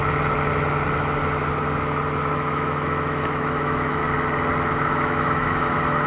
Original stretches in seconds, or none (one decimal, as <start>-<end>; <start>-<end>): 0.0-2.3; 4.0-4.7